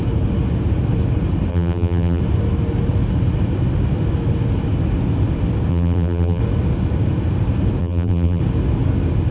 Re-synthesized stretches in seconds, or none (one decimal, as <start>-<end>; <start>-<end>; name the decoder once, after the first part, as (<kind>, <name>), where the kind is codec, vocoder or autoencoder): 1.5-2.2 (vocoder, BigVGAN v2); 5.7-6.4; 7.8-8.4